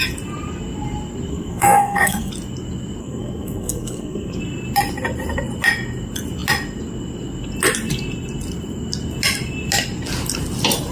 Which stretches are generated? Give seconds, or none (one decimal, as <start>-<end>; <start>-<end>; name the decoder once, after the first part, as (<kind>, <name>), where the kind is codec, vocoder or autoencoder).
1.3-2.3 (codec, SNAC); 3.0-4.4